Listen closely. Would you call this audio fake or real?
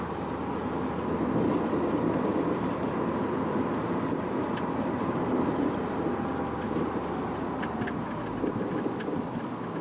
real